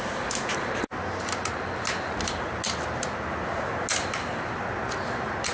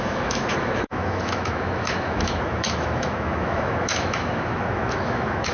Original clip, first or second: first